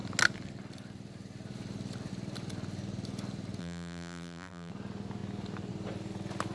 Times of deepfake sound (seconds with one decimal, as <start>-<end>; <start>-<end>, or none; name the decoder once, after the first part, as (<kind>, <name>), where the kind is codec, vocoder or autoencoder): 3.6-4.7 (vocoder, BigVGAN v2)